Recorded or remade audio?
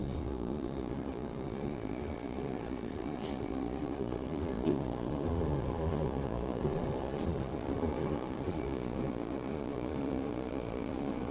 remade